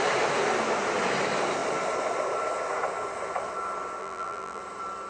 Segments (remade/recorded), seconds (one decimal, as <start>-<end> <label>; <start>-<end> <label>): 0.0-4.0 recorded; 4.0-4.6 remade; 4.6-5.1 recorded